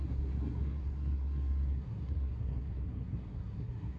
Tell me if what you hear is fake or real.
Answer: fake